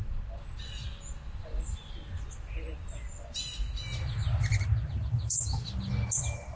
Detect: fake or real real